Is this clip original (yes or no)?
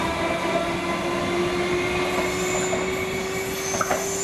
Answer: yes